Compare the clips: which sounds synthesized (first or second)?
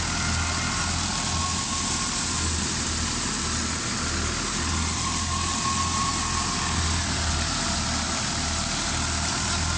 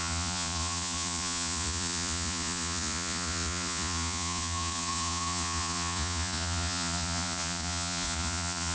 second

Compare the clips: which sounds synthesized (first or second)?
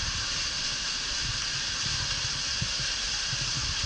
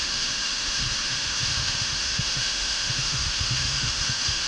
second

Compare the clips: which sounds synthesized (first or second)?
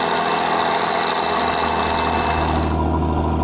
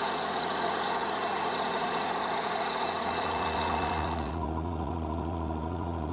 second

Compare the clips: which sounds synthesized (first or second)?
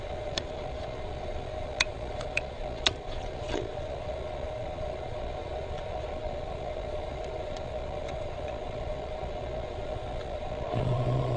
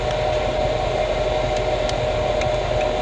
first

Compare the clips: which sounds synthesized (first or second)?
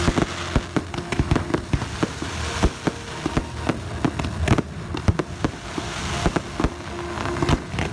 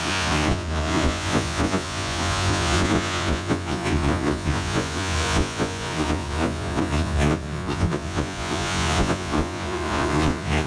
second